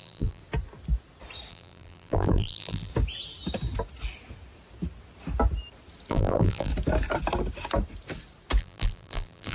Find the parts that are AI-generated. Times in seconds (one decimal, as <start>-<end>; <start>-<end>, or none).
0.0-0.4; 1.5-2.9; 6.1-6.7; 8.6-9.5